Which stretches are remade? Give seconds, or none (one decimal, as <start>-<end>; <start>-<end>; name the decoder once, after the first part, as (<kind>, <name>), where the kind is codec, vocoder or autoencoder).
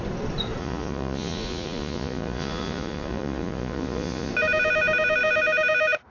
0.6-4.3 (vocoder, Vocos)